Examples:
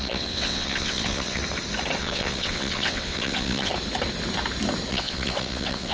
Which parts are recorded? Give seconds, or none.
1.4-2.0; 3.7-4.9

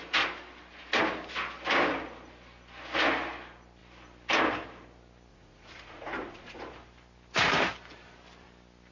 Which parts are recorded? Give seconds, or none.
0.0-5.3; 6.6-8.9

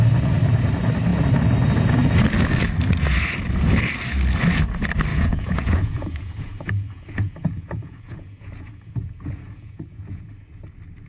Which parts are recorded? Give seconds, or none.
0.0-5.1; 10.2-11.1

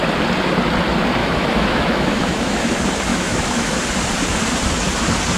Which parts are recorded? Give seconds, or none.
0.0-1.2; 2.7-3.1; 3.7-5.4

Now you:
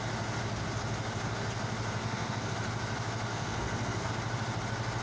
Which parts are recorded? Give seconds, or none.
0.0-2.0; 2.5-3.3; 4.1-5.0

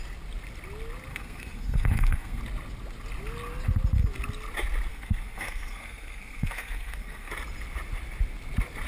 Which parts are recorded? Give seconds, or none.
0.0-1.1; 2.4-4.9; 7.3-8.9

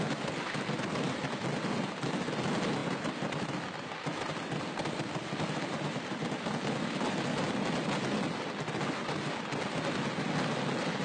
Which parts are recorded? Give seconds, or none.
0.0-2.8; 7.1-11.0

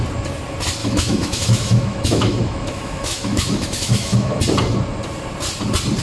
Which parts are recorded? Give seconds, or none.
0.0-0.8; 4.4-6.0